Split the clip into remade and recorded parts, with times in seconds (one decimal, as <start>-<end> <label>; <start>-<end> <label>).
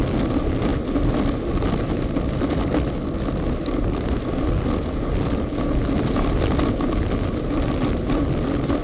0.0-8.8 recorded